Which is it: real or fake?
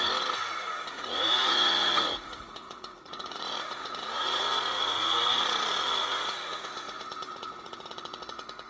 fake